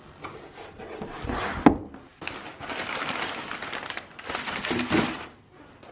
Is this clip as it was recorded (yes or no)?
yes